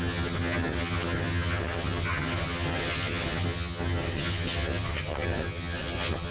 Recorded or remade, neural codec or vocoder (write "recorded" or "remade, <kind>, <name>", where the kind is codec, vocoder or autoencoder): remade, vocoder, HiFi-GAN